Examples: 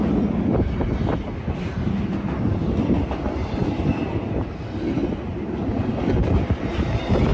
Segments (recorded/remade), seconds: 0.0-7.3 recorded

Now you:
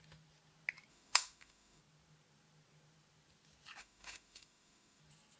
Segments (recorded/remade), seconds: 0.0-0.9 recorded; 0.9-1.8 remade; 1.8-3.8 recorded; 3.8-5.0 remade; 5.0-5.4 recorded

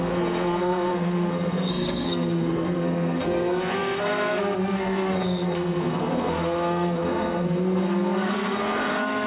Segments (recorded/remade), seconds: 0.0-9.3 remade

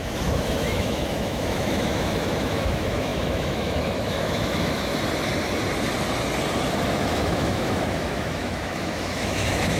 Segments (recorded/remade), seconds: 0.0-4.9 remade; 4.9-7.1 recorded; 7.1-9.8 remade

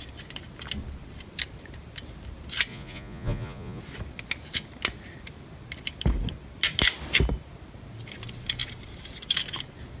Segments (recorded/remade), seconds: 0.0-2.7 recorded; 2.7-3.8 remade; 3.8-10.0 recorded

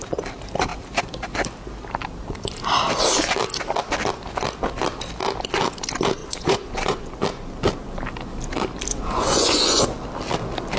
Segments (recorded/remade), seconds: 0.0-6.2 recorded; 6.2-7.1 remade; 7.1-8.9 recorded; 8.9-9.8 remade; 9.8-10.8 recorded